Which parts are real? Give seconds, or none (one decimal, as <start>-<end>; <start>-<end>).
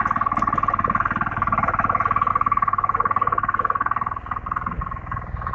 0.0-2.3